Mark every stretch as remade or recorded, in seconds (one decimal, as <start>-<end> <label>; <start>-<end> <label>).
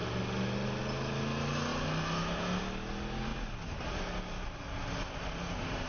0.0-5.9 recorded